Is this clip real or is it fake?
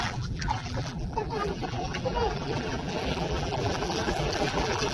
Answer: fake